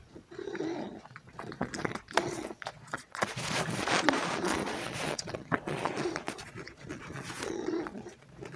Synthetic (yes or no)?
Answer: yes